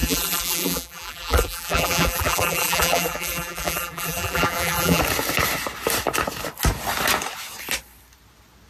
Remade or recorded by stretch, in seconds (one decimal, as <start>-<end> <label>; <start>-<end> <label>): 0.0-5.0 remade; 5.0-8.7 recorded